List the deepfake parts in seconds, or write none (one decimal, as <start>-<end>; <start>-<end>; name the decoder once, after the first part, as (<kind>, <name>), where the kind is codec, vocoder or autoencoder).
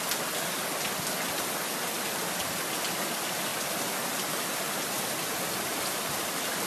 none